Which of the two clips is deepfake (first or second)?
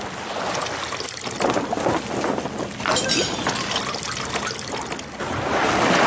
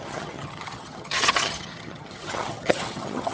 second